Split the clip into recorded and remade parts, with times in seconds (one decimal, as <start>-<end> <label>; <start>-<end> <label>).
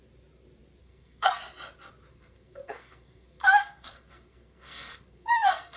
0.0-0.8 recorded; 0.8-1.4 remade; 1.4-2.1 recorded; 2.1-5.8 remade